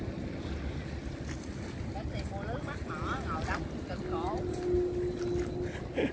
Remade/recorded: recorded